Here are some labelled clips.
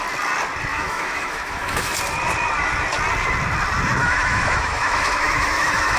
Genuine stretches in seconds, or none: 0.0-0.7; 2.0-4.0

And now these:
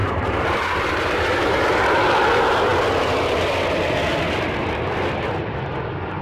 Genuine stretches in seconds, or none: 1.8-6.2

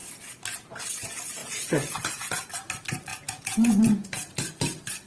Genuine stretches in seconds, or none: 0.0-1.4; 2.5-3.1; 4.4-5.1

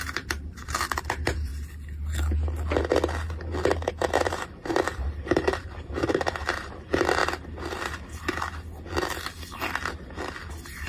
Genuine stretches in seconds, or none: 1.5-3.9; 7.2-10.5